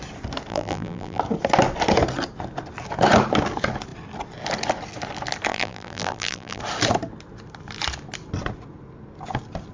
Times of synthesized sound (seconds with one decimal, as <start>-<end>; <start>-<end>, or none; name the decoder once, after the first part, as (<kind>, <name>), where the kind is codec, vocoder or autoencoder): 0.5-1.2 (vocoder, BigVGAN v2); 5.5-6.6